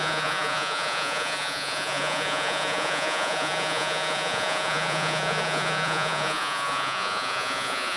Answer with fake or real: fake